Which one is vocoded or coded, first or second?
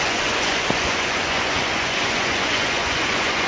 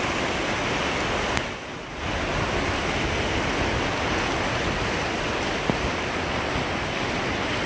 first